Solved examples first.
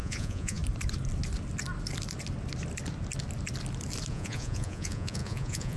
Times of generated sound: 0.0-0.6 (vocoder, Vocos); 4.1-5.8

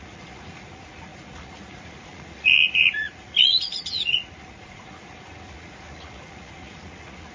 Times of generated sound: 0.0-7.3 (vocoder, Vocos)

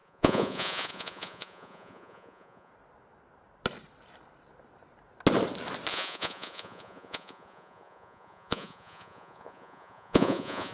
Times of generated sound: 0.0-2.7 (vocoder, Vocos); 5.9-10.7